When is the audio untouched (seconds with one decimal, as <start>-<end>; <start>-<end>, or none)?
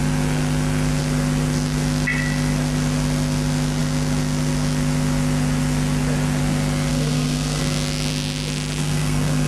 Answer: 0.0-6.9; 7.6-8.8